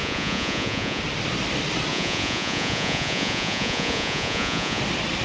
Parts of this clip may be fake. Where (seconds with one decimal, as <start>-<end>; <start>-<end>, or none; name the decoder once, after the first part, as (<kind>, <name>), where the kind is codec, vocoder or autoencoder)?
0.0-1.0 (vocoder, Vocos); 1.9-4.8